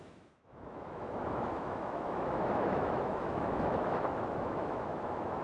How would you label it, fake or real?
fake